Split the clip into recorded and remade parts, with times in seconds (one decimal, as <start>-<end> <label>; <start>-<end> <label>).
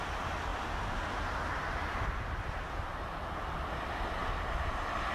0.0-5.1 recorded